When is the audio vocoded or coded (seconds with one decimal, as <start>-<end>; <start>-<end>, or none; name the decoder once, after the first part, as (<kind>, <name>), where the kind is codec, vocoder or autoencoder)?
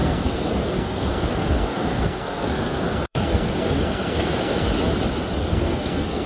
0.0-4.7 (codec, SNAC); 5.5-6.3